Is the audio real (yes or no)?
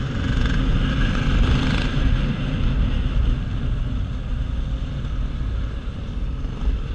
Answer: yes